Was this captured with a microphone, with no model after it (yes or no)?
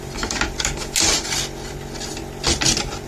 yes